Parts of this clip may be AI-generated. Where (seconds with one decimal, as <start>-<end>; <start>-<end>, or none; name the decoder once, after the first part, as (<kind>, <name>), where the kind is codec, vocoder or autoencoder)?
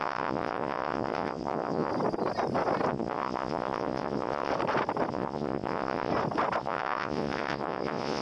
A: 0.0-1.9 (vocoder, Vocos); 2.9-4.5; 5.1-6.1; 6.6-8.2